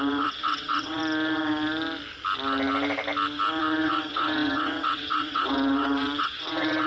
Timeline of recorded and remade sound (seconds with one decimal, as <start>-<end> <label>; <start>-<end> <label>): 0.0-1.0 remade; 1.0-3.6 recorded; 3.6-6.9 remade